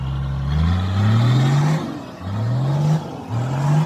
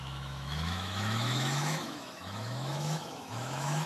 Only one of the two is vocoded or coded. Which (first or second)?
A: second